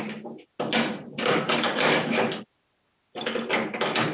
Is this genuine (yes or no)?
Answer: yes